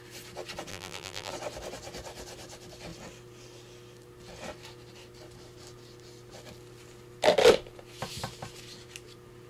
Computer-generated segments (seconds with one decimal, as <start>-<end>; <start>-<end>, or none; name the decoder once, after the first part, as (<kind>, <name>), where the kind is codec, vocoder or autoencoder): 0.7-1.3 (vocoder, BigVGAN v2)